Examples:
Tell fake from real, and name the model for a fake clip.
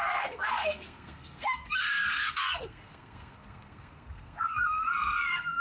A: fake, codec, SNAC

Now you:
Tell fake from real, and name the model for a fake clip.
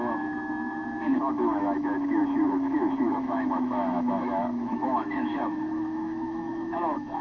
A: fake, autoencoder, DAC-VAE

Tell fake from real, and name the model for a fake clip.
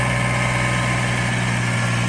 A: real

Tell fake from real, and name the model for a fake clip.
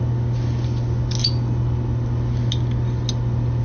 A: real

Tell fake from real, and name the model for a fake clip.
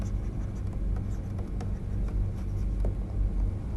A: real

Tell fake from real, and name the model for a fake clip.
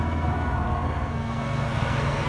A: fake, codec, SNAC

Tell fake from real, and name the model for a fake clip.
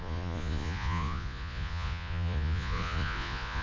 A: fake, vocoder, Vocos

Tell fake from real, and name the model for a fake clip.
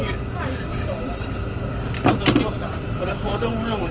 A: real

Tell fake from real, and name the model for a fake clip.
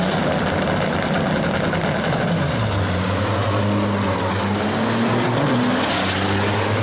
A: real